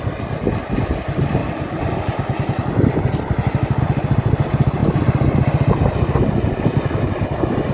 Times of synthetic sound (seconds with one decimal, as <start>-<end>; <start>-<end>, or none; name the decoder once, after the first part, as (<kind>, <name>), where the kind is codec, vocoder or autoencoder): none